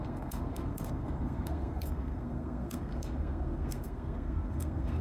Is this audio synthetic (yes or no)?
yes